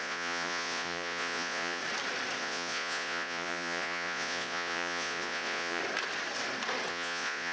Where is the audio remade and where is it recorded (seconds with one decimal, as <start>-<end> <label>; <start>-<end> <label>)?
0.0-1.8 remade; 1.8-2.4 recorded; 2.4-5.8 remade; 5.8-6.9 recorded; 6.9-7.5 remade